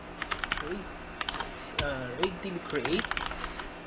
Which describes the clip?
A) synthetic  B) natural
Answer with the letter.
B